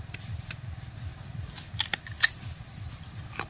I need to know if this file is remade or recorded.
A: recorded